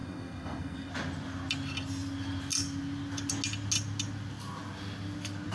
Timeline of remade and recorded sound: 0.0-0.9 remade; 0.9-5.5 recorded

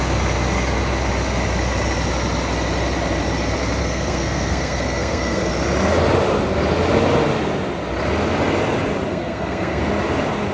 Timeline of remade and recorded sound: 0.0-3.8 recorded; 3.8-5.5 remade; 5.5-9.1 recorded; 9.1-9.8 remade; 9.8-10.5 recorded

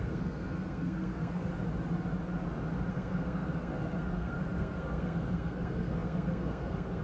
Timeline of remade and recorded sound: 0.0-1.5 remade; 1.5-2.9 recorded; 2.9-7.0 remade

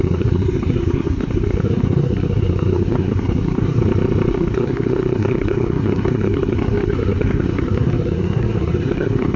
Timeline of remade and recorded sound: 0.0-3.8 remade; 3.8-4.3 recorded; 4.3-9.4 remade

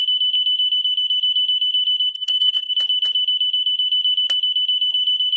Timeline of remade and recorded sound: 0.0-2.1 recorded; 2.1-2.7 remade; 2.7-5.4 recorded

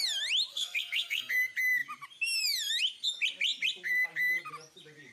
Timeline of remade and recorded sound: 0.0-0.5 recorded; 0.5-1.3 remade; 1.3-5.1 recorded

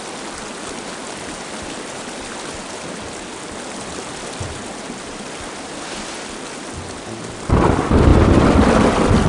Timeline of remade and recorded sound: 0.0-9.3 recorded

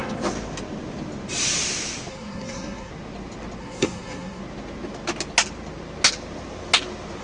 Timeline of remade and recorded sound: 0.0-2.1 recorded; 2.1-2.9 remade; 2.9-3.6 recorded; 3.6-4.4 remade; 4.4-7.2 recorded